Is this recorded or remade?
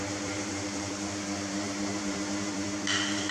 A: remade